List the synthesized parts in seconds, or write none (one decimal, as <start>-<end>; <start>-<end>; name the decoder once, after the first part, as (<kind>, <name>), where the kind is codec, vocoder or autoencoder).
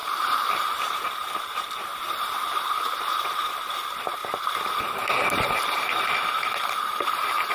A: 0.0-4.2 (vocoder, BigVGAN v2); 4.7-7.5